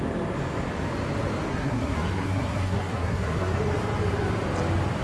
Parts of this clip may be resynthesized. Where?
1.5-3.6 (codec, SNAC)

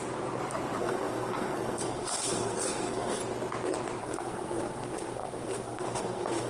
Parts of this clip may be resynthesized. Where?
0.8-3.2 (codec, SNAC); 4.0-6.5

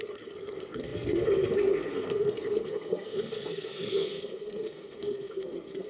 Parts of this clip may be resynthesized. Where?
0.0-5.9 (codec, SNAC)